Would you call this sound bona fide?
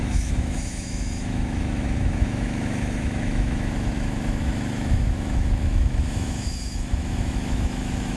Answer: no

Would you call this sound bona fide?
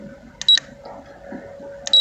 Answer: yes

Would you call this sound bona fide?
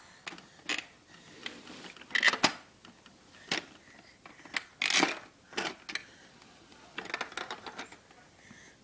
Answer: yes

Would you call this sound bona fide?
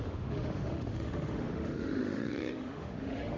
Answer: no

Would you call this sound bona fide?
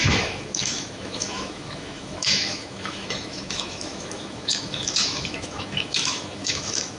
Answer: no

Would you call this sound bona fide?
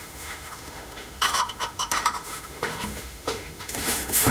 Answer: no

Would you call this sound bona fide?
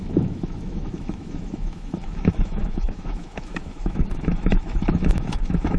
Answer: no